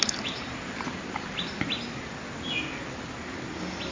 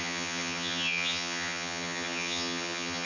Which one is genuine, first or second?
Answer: first